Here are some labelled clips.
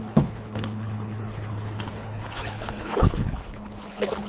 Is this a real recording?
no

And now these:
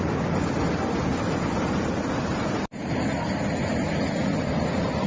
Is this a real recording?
yes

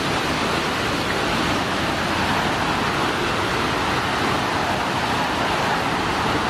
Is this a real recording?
yes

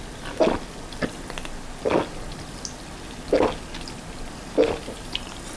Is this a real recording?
yes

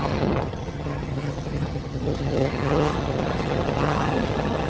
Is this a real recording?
no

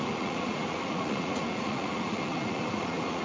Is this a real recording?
no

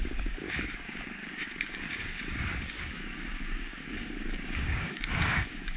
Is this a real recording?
no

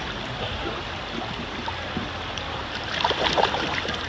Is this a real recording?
yes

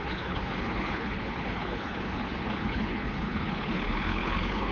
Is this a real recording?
no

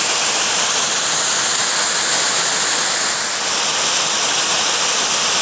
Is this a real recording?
yes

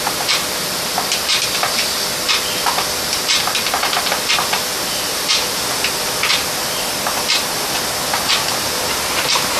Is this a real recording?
yes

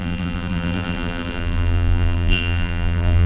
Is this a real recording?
no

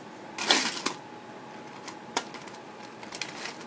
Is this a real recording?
yes